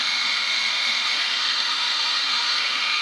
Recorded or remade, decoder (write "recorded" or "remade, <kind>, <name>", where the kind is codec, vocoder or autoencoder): remade, autoencoder, DAC-VAE